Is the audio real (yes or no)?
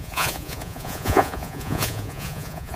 no